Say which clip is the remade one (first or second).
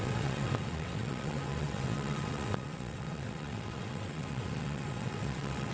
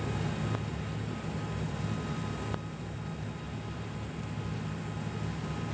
first